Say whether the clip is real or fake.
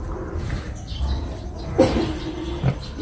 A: real